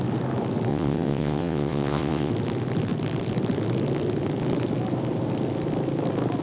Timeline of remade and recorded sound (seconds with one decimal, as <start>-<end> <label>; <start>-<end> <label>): 0.0-0.7 recorded; 0.7-2.3 remade; 2.3-6.4 recorded

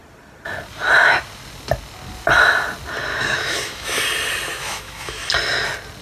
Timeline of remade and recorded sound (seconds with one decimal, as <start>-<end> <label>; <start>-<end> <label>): 0.0-3.1 recorded; 3.1-4.0 remade; 4.0-4.5 recorded; 4.5-5.3 remade; 5.3-6.0 recorded

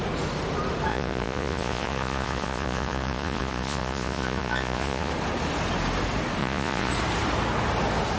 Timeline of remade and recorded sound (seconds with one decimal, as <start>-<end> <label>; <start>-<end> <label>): 0.0-0.9 recorded; 0.9-5.1 remade; 5.1-6.4 recorded; 6.4-6.9 remade; 6.9-8.2 recorded

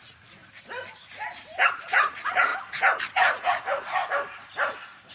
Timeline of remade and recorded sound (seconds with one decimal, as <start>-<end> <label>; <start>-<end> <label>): 0.0-0.4 remade; 0.4-1.7 recorded; 1.7-2.5 remade; 2.5-3.1 recorded; 3.1-4.0 remade; 4.0-5.1 recorded

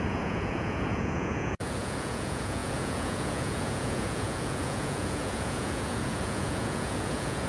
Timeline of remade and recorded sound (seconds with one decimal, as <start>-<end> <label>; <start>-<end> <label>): 0.0-7.5 remade

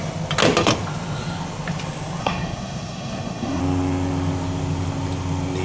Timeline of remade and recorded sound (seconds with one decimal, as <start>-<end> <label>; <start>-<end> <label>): 0.0-2.2 recorded; 2.2-3.6 remade; 3.6-5.6 recorded

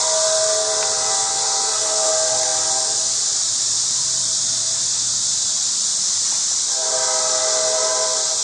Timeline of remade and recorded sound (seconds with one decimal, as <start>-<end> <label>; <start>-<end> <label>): 0.0-1.1 recorded; 1.1-2.1 remade; 2.1-8.4 recorded

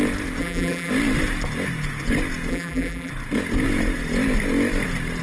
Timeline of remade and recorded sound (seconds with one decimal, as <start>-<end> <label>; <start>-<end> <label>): 0.0-0.4 recorded; 0.4-0.9 remade; 0.9-2.5 recorded; 2.5-3.1 remade; 3.1-5.2 recorded